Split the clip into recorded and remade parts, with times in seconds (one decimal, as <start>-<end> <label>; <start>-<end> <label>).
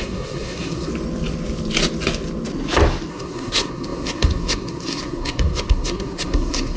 0.0-0.9 remade; 0.9-3.1 recorded; 3.1-6.8 remade